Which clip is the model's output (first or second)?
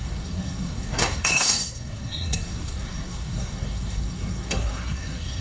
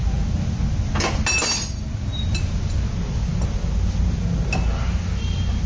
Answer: first